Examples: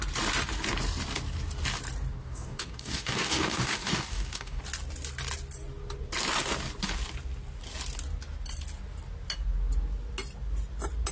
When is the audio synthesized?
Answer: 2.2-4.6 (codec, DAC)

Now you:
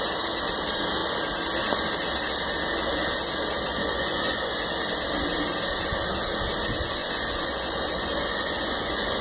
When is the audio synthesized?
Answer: 3.8-4.5 (vocoder, Vocos); 7.0-9.2